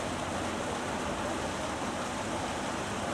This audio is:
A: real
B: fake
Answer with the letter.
A